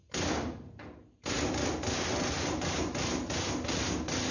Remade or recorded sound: recorded